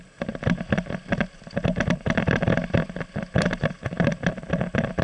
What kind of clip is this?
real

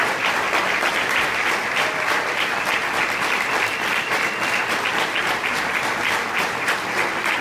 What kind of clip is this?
fake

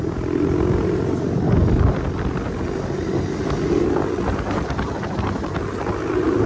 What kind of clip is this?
real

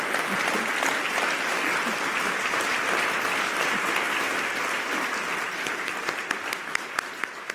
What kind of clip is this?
real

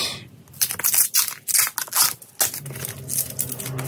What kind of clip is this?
real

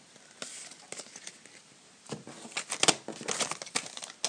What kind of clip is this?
real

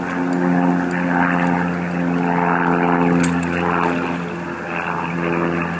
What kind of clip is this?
real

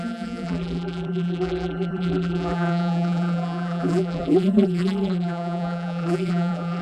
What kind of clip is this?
fake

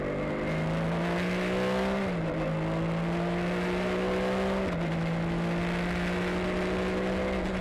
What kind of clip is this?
real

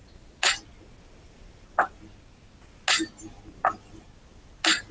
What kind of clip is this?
real